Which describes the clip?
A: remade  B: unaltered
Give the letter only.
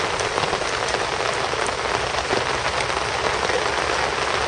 B